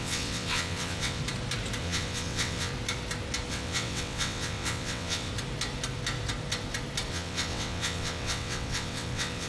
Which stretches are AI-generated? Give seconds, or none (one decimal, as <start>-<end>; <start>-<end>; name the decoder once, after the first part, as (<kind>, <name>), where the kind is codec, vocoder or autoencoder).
0.0-1.2 (vocoder, WaveNeXt); 1.8-2.7; 3.5-5.3; 7.1-9.5